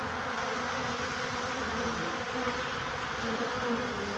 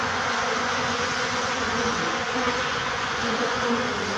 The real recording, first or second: first